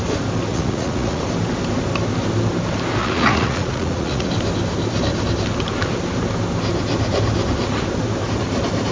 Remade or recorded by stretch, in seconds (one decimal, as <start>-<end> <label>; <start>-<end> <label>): 0.0-0.5 recorded; 0.5-1.2 remade; 1.2-3.0 recorded; 3.0-4.3 remade; 4.3-8.9 recorded